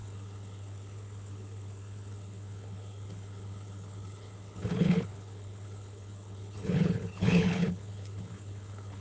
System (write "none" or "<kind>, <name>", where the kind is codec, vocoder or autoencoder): codec, HILCodec